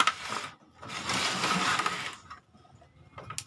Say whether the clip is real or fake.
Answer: real